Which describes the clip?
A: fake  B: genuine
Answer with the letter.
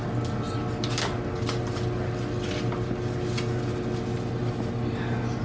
B